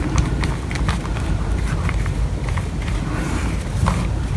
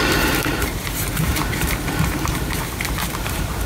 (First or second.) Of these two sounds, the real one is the first